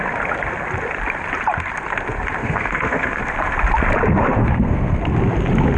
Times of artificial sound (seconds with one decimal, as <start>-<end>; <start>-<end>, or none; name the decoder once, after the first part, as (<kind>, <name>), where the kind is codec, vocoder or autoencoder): 2.4-3.2 (codec, SNAC); 4.4-5.0